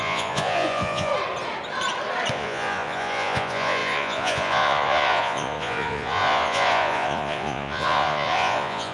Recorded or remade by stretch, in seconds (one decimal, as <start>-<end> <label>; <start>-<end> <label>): 0.0-1.1 remade; 1.1-2.3 recorded; 2.3-8.9 remade